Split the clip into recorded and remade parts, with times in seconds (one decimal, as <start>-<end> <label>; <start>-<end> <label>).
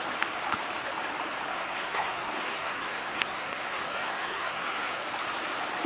0.0-1.5 recorded; 1.5-5.0 remade; 5.0-5.9 recorded